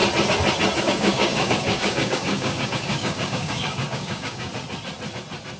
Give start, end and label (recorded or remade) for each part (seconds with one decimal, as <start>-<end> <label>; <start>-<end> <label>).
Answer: 0.0-0.8 recorded; 0.8-4.5 remade; 4.5-5.6 recorded